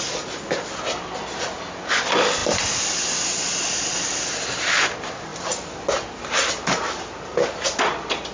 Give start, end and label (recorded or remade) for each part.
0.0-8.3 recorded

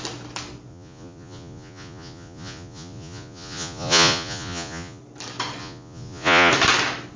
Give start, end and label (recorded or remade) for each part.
0.0-0.7 recorded; 0.7-5.0 remade; 5.0-5.6 recorded; 5.6-6.5 remade; 6.5-7.2 recorded

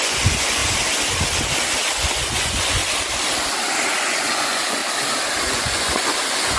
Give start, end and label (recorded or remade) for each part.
0.0-0.6 remade; 0.6-1.9 recorded; 1.9-2.8 remade; 2.8-4.0 recorded; 4.0-4.8 remade; 4.8-5.4 recorded; 5.4-6.6 remade

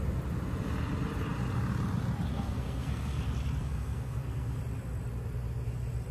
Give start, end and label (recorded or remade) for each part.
0.0-2.3 recorded; 2.3-3.2 remade; 3.2-3.6 recorded; 3.6-4.6 remade; 4.6-6.1 recorded